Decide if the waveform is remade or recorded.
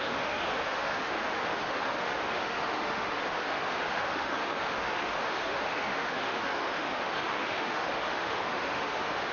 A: remade